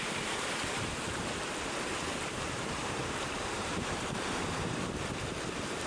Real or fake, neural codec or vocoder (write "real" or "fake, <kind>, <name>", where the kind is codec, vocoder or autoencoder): fake, vocoder, BigVGAN v2